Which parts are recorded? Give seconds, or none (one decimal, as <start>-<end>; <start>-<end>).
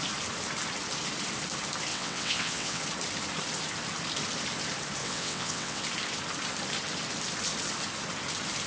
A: 0.0-1.9; 2.8-5.0; 5.8-8.7